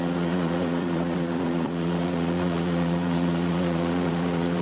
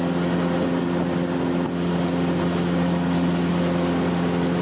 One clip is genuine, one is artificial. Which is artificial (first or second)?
first